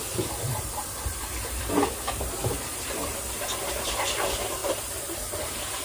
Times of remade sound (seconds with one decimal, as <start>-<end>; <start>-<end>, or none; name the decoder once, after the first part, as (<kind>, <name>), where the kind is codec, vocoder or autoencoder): 0.0-5.8 (vocoder, BigVGAN v2)